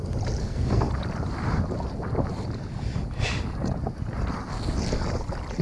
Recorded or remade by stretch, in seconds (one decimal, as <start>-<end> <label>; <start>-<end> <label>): 0.0-0.4 recorded; 0.4-0.9 remade; 0.9-5.6 recorded